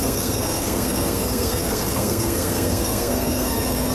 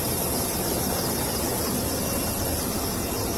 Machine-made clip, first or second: first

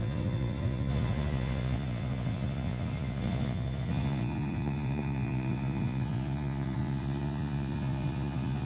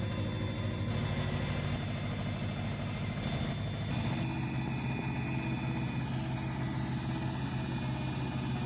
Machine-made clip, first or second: first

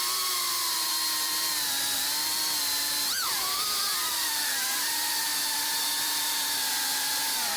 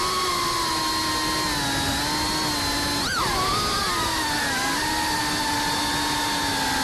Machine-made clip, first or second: first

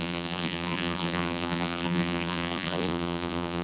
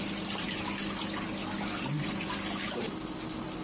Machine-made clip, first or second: first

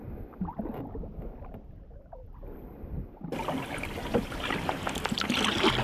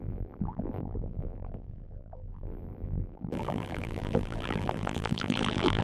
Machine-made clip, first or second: second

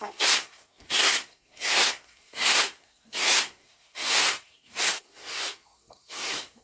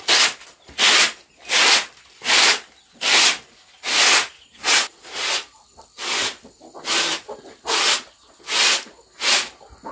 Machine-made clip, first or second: first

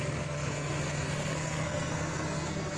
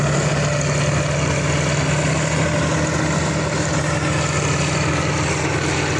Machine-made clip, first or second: first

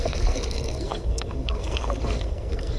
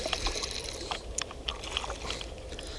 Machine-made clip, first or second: first